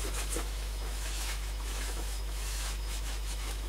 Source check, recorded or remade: remade